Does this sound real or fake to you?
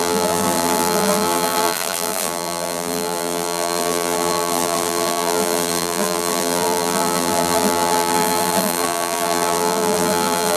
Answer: fake